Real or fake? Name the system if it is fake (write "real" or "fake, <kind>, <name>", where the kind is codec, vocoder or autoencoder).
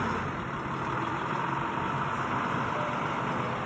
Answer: real